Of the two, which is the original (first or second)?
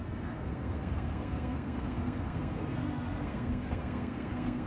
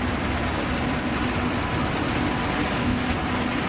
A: second